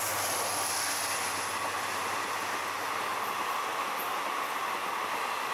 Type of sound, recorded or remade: recorded